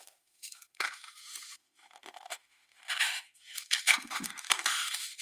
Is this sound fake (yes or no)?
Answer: yes